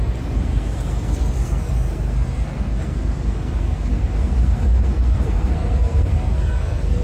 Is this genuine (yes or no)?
no